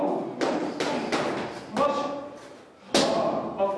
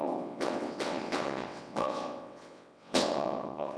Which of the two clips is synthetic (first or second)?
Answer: second